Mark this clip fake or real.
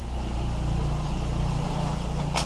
real